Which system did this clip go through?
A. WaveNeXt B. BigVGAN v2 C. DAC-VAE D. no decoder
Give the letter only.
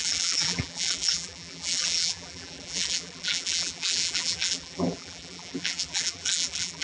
B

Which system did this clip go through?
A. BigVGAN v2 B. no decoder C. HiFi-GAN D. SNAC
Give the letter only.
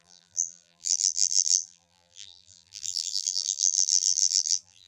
A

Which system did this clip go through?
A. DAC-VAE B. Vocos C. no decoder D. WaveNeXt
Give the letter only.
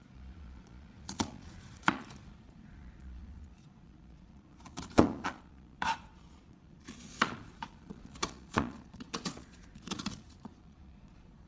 B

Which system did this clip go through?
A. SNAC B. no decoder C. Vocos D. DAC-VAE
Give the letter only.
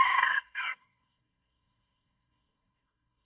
A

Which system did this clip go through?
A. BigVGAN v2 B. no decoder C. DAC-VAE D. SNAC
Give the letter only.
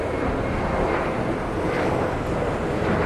B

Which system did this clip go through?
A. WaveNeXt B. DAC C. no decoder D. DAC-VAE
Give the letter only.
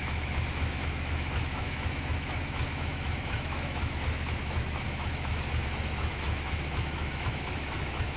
D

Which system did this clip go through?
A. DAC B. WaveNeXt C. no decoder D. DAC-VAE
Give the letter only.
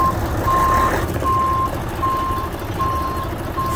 C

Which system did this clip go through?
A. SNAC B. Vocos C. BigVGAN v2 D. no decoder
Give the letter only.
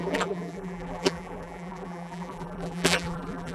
C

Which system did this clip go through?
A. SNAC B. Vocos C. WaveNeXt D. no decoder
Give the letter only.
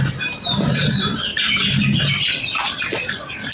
D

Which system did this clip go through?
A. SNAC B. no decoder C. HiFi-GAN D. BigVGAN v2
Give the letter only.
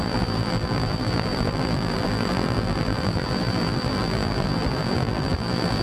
D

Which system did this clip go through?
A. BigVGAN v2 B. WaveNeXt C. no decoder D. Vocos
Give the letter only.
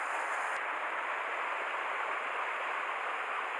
C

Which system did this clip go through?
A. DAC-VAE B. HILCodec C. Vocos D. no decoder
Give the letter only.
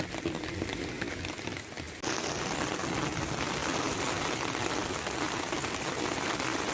D